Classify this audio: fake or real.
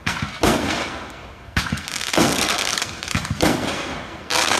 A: fake